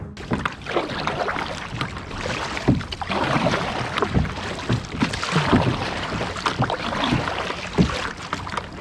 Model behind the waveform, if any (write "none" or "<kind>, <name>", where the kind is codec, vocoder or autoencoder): none